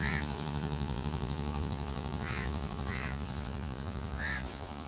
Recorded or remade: remade